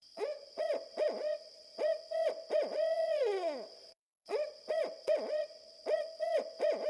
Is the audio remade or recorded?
remade